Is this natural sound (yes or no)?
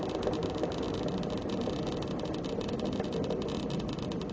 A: yes